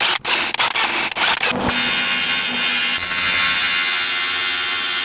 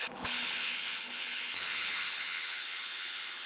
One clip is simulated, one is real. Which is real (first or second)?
first